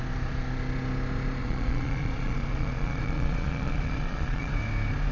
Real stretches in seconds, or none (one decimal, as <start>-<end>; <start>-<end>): 0.0-1.4; 4.5-5.1